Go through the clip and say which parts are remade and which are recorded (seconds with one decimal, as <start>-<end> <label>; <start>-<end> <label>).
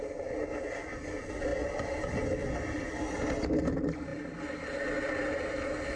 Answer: 0.0-6.0 recorded